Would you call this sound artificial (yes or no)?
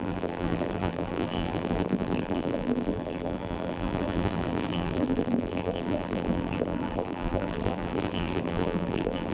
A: yes